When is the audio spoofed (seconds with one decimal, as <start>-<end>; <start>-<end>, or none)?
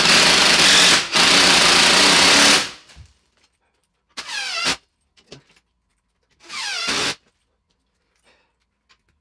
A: none